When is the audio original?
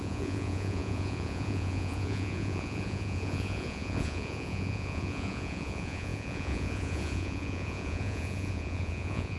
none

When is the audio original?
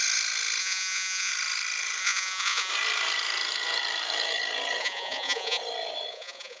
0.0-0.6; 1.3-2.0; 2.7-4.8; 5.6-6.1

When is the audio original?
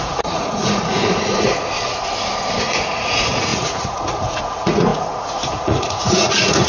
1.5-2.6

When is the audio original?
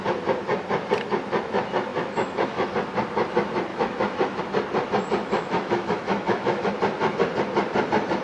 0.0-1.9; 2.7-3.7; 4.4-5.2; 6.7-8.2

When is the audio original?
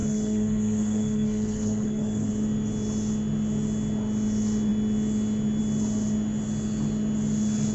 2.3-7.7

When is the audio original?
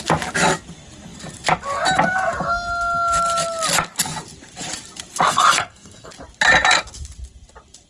0.0-5.3; 6.1-7.9